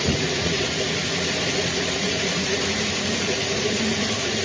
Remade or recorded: remade